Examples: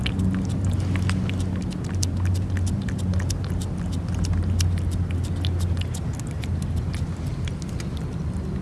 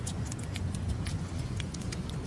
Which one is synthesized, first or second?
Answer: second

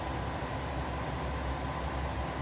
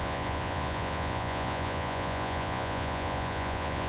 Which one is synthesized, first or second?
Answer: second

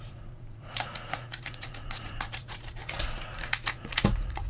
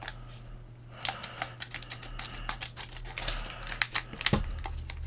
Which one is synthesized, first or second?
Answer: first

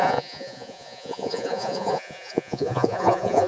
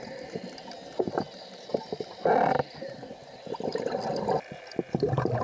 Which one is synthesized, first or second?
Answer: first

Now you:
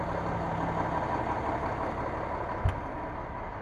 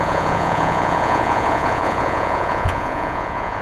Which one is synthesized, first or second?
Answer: second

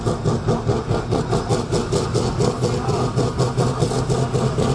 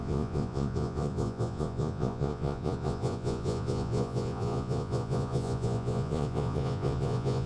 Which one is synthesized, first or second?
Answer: second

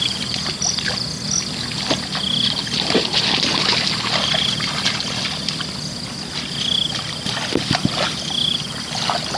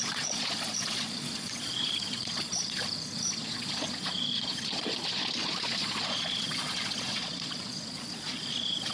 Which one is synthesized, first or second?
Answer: second